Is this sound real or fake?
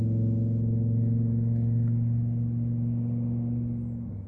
real